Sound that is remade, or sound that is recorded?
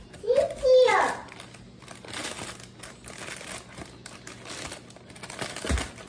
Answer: recorded